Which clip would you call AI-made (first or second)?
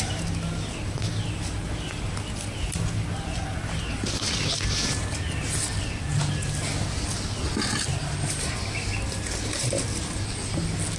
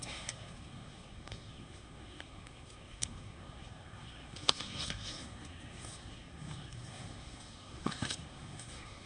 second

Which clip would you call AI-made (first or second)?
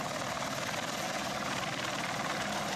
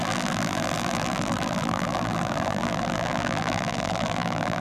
second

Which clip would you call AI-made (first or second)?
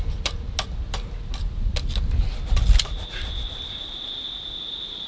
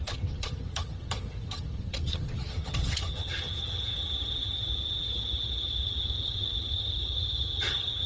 second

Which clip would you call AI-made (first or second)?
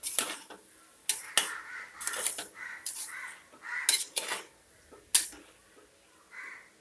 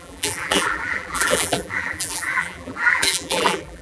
second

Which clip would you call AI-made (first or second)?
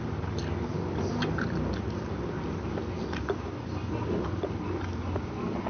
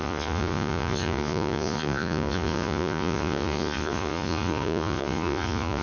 second